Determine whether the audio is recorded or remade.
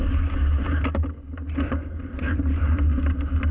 recorded